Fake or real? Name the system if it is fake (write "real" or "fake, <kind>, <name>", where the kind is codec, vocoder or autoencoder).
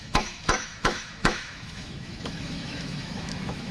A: fake, autoencoder, DAC-VAE